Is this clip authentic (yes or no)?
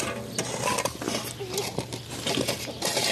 yes